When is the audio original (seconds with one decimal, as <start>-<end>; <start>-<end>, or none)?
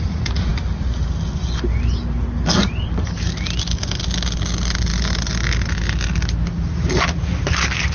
0.0-7.9